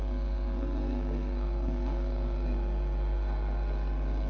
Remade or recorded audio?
remade